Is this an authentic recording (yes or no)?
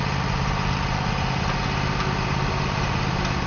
yes